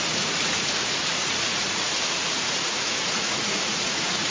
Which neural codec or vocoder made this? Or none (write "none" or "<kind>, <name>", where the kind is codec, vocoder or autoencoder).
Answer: vocoder, Vocos